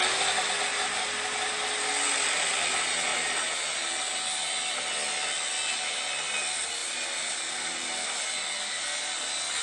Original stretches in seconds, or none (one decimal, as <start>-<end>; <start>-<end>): 0.0-9.6